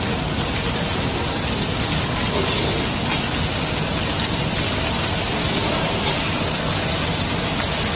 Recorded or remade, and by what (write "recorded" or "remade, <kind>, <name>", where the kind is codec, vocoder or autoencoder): recorded